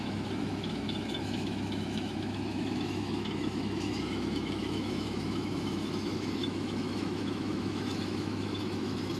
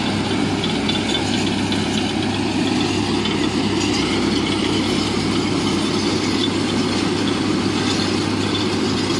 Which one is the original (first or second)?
second